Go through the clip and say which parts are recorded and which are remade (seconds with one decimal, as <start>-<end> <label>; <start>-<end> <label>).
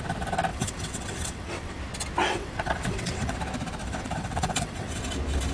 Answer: 0.0-0.5 recorded; 0.5-1.8 remade; 1.8-2.2 recorded; 2.2-3.4 remade; 3.4-3.8 recorded; 3.8-5.0 remade; 5.0-5.5 recorded